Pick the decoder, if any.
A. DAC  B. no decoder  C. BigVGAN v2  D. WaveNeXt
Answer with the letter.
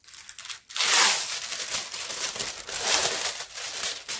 B